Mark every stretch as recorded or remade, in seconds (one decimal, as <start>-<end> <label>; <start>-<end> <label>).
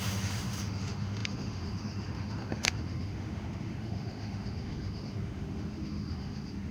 0.0-6.7 remade